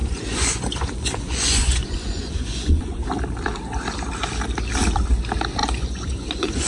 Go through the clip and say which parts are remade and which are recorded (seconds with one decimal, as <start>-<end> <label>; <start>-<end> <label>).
0.0-3.1 remade; 3.1-5.6 recorded; 5.6-6.7 remade